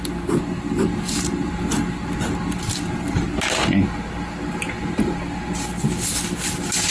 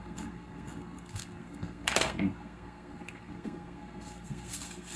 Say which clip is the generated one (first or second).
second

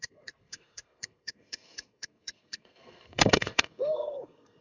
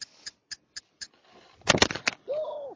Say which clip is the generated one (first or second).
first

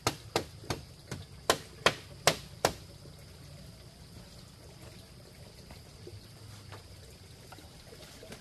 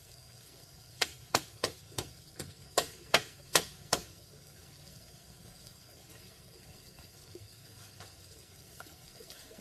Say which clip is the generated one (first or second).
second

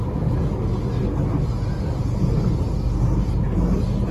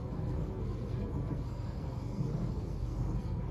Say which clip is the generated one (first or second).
second